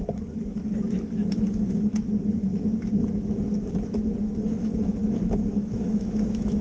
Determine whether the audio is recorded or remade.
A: remade